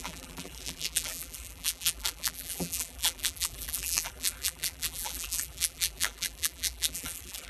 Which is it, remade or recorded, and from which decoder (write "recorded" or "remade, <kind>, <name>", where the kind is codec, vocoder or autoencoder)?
remade, vocoder, BigVGAN v2